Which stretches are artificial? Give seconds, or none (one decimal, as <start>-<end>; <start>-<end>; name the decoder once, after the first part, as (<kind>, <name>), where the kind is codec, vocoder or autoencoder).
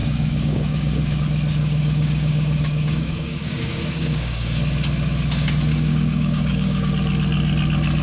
0.0-1.2 (codec, DAC); 1.6-4.6; 5.7-6.9